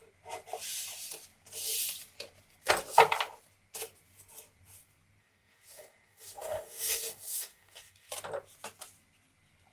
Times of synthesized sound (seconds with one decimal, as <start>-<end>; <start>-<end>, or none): 5.2-8.1